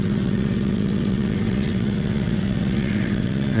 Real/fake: fake